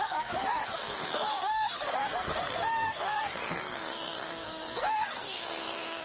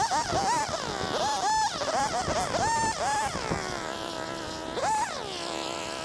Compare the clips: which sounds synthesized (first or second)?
first